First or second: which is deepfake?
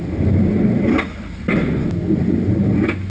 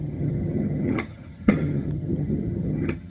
second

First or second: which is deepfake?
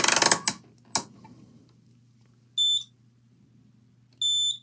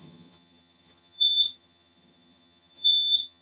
second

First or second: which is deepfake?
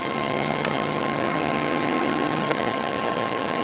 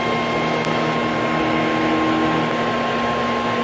first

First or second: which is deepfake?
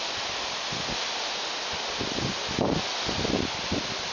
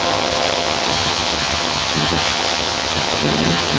second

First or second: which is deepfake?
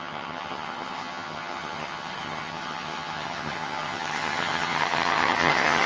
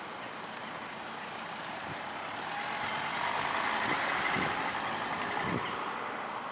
first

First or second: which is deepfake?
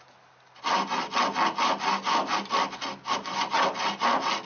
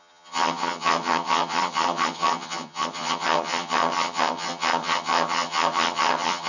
second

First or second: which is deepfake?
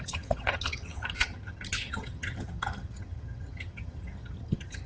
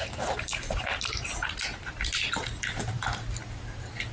first